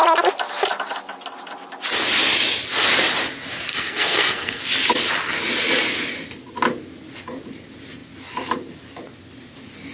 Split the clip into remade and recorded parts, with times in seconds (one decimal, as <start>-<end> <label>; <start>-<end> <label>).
0.0-3.7 recorded; 3.7-4.6 remade; 4.6-9.9 recorded